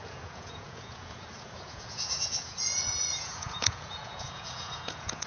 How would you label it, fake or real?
fake